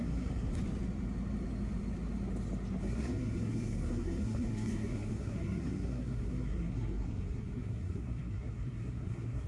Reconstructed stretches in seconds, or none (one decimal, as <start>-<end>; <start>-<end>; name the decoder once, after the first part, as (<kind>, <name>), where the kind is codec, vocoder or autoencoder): 0.0-0.5 (codec, SNAC); 2.8-9.5